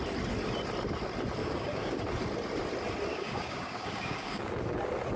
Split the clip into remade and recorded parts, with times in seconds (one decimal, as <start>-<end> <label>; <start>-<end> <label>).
0.0-1.4 recorded; 1.4-2.0 remade; 2.0-3.1 recorded; 3.1-4.5 remade; 4.5-5.2 recorded